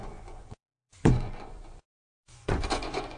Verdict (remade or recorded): remade